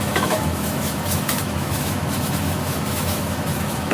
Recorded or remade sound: remade